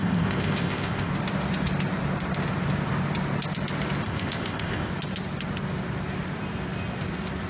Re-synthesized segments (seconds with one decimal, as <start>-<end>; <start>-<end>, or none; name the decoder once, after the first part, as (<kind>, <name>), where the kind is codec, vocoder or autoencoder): 0.0-1.1 (codec, ZipCodec); 4.0-4.9